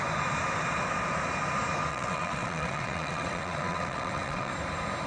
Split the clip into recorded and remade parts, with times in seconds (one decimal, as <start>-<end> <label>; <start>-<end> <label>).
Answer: 0.0-1.9 recorded; 1.9-4.5 remade; 4.5-5.1 recorded